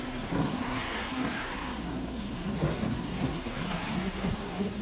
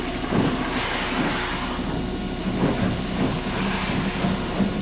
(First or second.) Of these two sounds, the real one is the second